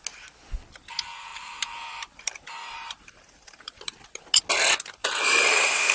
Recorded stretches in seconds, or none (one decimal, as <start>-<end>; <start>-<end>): 0.0-1.3; 4.2-5.0